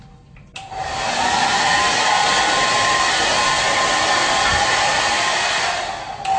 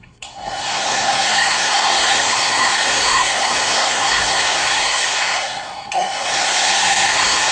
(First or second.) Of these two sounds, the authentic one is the first